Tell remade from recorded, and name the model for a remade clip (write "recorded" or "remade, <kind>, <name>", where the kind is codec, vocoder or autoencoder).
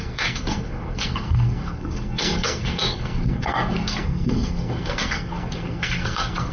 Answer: remade, codec, SNAC